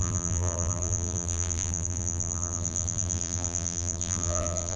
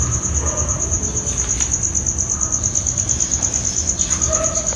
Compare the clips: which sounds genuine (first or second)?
second